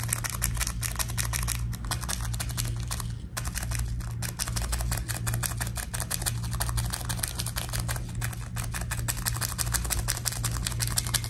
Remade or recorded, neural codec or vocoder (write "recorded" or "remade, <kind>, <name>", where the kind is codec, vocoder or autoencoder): recorded